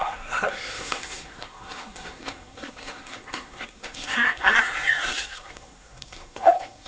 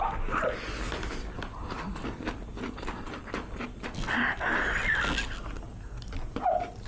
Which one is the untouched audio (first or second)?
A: second